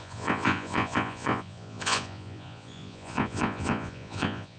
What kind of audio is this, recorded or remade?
remade